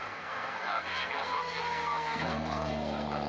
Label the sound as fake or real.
fake